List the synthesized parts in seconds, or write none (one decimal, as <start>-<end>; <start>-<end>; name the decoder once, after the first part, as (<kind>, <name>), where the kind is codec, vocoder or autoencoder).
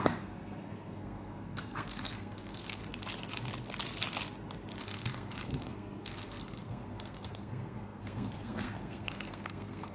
0.0-2.8 (codec, SNAC); 4.8-9.9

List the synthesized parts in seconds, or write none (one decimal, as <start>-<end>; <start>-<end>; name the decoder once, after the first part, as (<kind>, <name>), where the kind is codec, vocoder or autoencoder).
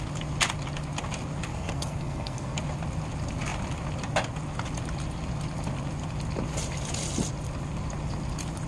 1.5-2.6 (codec, SNAC)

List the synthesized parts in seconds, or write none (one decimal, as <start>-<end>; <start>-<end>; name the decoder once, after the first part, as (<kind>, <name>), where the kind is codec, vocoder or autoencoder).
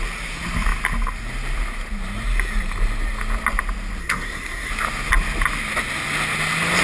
4.0-4.7 (codec, SNAC)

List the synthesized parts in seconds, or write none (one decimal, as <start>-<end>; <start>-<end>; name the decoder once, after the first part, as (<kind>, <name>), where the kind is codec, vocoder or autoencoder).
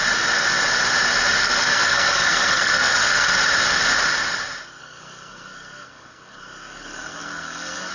1.4-3.3 (codec, SNAC); 4.8-7.9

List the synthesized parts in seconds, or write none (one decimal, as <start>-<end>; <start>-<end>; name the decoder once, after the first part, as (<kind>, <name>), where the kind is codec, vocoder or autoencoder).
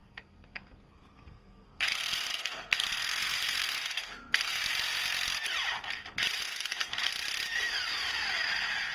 0.0-4.6 (codec, SNAC); 6.4-7.1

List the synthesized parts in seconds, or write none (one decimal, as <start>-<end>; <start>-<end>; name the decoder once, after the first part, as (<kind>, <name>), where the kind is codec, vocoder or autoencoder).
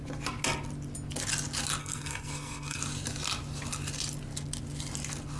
1.8-2.8 (codec, SNAC)